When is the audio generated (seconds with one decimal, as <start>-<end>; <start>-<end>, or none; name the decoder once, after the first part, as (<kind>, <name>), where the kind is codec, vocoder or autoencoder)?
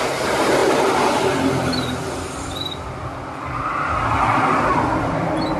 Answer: none